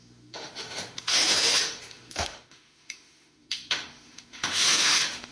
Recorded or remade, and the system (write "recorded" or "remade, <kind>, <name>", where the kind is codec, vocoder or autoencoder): remade, autoencoder, DAC-VAE